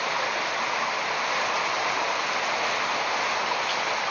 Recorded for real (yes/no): yes